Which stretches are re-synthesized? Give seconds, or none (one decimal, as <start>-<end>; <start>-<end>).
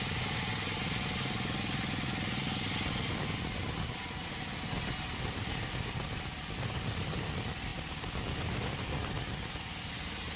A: none